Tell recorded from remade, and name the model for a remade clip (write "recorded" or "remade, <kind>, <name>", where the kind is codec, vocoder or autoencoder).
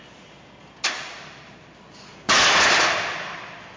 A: recorded